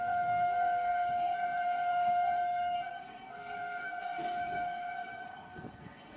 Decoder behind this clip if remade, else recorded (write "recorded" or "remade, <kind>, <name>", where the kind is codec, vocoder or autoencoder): remade, codec, SNAC